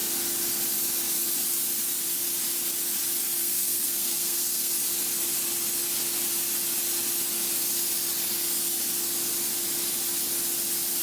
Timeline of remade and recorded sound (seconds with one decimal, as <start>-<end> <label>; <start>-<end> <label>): 0.0-3.4 recorded; 3.4-4.7 remade; 4.7-11.0 recorded

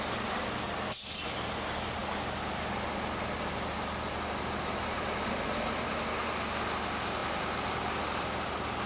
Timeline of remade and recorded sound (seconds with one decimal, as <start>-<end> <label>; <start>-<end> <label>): 0.0-8.9 recorded